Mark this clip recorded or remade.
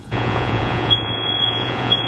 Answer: remade